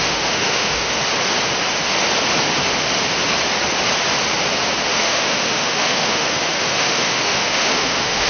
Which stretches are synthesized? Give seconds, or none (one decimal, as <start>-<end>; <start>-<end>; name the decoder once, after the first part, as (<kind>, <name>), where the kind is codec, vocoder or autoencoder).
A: 0.0-1.0 (autoencoder, DAC-VAE); 4.9-8.3

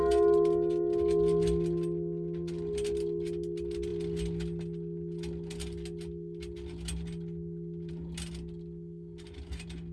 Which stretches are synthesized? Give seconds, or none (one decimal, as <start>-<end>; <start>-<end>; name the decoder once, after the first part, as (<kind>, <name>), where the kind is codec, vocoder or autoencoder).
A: none